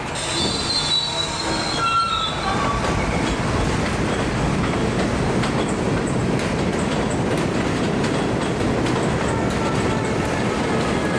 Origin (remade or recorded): recorded